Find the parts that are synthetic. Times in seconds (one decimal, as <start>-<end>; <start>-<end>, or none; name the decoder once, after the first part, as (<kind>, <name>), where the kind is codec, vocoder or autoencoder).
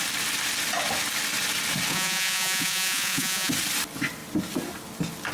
1.9-3.5 (vocoder, Vocos)